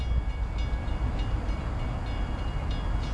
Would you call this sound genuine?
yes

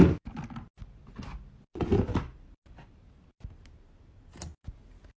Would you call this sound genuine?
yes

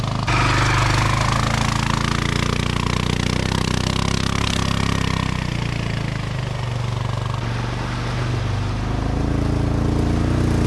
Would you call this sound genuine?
yes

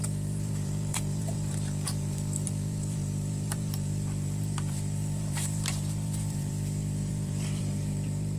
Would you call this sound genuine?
no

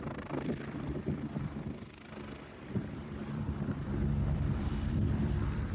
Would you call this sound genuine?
no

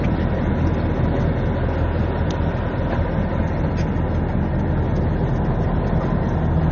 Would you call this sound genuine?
yes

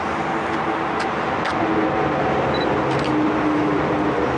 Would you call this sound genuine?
yes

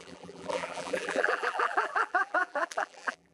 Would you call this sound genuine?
no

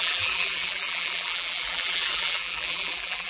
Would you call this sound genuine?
no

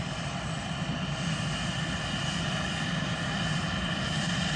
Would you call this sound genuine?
no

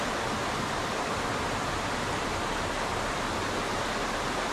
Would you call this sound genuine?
yes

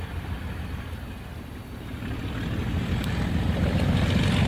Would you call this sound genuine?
yes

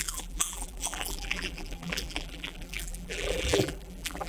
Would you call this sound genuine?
no